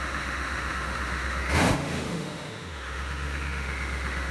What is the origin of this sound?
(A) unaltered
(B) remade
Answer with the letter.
B